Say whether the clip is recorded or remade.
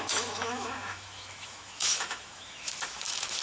remade